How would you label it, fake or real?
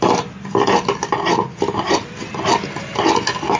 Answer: real